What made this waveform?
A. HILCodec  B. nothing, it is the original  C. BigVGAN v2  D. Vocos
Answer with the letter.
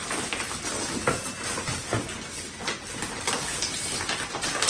B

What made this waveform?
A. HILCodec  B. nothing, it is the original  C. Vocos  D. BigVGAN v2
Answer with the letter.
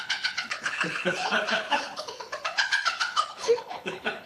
A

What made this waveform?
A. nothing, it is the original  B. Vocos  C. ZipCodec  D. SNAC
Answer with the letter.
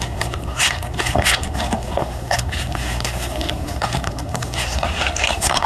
D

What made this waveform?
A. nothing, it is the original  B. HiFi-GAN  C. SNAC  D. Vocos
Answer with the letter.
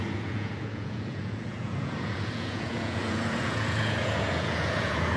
D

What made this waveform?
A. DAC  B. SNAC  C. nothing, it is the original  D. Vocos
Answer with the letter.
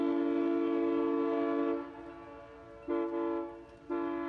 C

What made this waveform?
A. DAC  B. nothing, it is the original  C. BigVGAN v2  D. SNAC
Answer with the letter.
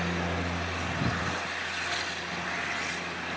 B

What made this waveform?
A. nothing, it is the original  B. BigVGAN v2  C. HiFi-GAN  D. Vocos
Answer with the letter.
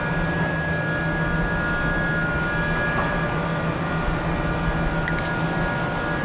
A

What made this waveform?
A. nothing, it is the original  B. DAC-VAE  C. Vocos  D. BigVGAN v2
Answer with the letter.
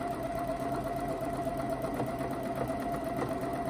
A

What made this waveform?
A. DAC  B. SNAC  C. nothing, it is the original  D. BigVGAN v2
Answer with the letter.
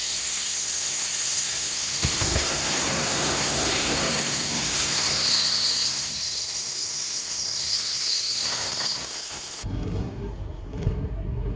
B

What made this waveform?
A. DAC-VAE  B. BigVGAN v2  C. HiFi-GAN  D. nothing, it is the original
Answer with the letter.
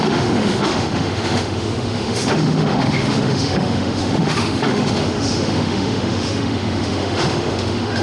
A